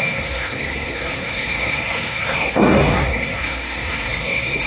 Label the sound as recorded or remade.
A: remade